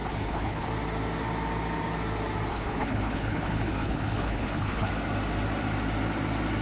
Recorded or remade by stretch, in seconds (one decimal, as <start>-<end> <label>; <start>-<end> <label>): 0.0-0.7 remade; 0.7-2.5 recorded; 2.5-4.9 remade; 4.9-6.6 recorded